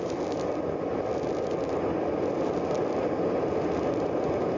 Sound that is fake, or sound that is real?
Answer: real